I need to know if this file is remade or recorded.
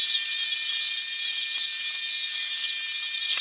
recorded